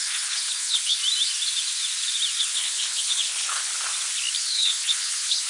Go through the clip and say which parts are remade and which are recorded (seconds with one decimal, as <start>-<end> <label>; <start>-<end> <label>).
0.0-1.0 remade; 1.0-2.4 recorded; 2.4-3.7 remade; 3.7-4.4 recorded; 4.4-5.5 remade